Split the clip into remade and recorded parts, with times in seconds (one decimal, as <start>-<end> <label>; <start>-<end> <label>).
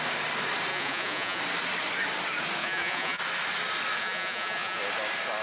0.0-0.7 recorded; 0.7-1.4 remade; 1.4-2.6 recorded; 2.6-3.2 remade; 3.2-4.0 recorded; 4.0-4.8 remade; 4.8-5.4 recorded